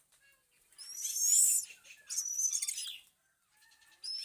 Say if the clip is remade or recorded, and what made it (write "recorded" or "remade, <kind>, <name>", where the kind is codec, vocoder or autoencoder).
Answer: recorded